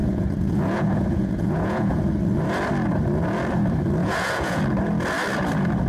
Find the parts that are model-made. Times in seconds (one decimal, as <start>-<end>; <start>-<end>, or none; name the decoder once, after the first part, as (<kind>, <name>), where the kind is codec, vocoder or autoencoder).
0.0-2.0 (vocoder, Vocos); 4.0-4.6